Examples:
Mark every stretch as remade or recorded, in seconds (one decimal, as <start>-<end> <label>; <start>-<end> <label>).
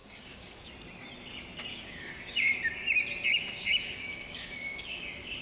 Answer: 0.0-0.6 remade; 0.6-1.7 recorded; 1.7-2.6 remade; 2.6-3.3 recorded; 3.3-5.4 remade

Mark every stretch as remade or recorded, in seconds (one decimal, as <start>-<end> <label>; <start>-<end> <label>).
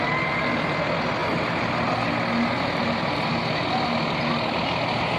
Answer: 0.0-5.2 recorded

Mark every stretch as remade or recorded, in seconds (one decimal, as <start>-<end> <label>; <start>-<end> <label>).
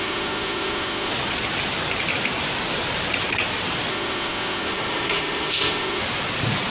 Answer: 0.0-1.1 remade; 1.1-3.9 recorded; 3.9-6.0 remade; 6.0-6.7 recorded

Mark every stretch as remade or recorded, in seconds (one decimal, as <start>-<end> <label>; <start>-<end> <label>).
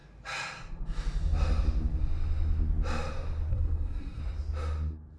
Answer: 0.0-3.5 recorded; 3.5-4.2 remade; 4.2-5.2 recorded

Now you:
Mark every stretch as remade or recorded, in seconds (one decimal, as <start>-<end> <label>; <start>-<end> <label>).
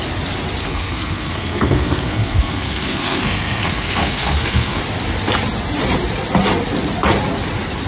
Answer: 0.0-0.6 recorded; 0.6-4.8 remade; 4.8-7.9 recorded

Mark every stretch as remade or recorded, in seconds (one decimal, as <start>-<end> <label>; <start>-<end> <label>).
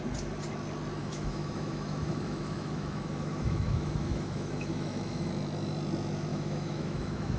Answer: 0.0-1.0 recorded; 1.0-5.3 remade; 5.3-6.3 recorded; 6.3-7.4 remade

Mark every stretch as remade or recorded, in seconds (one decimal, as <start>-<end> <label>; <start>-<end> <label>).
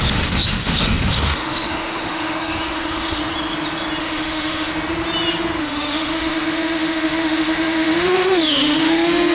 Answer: 0.0-3.2 remade; 3.2-4.0 recorded; 4.0-4.7 remade; 4.7-5.6 recorded; 5.6-9.3 remade